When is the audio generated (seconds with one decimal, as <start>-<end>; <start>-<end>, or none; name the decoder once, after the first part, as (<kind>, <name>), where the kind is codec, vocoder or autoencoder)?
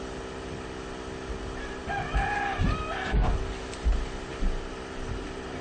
none